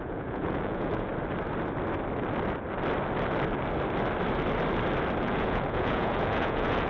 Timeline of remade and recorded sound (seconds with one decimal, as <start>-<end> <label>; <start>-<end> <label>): 0.0-1.1 remade; 1.1-5.2 recorded; 5.2-6.9 remade

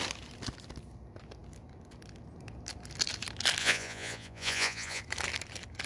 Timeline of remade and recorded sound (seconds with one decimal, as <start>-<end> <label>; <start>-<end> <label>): 0.0-3.6 recorded; 3.6-5.0 remade; 5.0-5.9 recorded

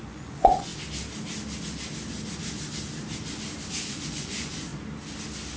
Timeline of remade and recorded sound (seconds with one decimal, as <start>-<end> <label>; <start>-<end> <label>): 0.0-0.7 remade; 0.7-3.7 recorded; 3.7-4.7 remade; 4.7-5.6 recorded